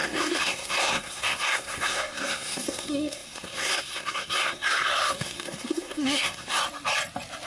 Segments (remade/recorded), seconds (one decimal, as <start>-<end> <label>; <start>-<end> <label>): 0.0-6.6 remade; 6.6-7.5 recorded